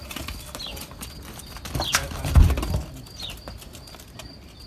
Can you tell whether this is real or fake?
real